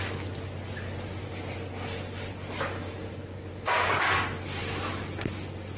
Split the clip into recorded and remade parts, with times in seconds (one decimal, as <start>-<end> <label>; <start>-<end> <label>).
0.0-3.5 remade; 3.5-4.6 recorded; 4.6-5.8 remade